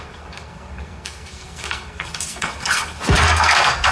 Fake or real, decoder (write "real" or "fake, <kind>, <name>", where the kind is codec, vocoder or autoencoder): fake, codec, SNAC